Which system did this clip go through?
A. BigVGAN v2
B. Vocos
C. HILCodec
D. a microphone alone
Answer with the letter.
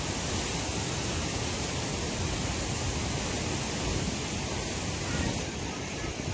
D